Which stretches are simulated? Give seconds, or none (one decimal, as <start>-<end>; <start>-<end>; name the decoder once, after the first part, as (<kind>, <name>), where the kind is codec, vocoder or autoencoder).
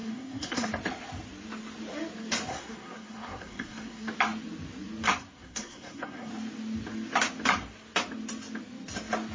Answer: 0.0-0.7 (codec, SNAC); 2.5-4.1; 5.2-6.3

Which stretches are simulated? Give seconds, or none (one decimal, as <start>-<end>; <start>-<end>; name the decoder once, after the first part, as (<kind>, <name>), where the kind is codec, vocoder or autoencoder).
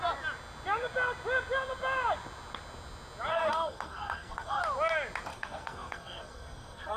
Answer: 3.3-4.6 (codec, SNAC); 5.3-7.0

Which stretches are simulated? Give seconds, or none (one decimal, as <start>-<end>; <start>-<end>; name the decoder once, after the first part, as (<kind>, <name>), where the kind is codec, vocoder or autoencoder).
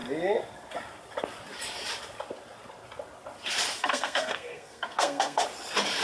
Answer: 3.8-5.4 (codec, SNAC)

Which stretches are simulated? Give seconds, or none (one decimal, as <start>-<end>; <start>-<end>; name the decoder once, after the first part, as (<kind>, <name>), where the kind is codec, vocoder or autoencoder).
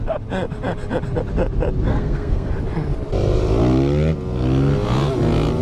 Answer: 1.9-2.5 (codec, SNAC)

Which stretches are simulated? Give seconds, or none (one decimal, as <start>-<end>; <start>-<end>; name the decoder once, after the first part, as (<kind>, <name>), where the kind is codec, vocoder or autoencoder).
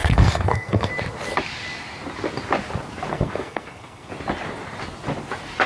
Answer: 0.0-0.9 (codec, SNAC); 3.1-4.1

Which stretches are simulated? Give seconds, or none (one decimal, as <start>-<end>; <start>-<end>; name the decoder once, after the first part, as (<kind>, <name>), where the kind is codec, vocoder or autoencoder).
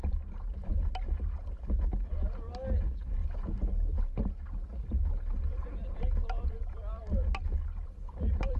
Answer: none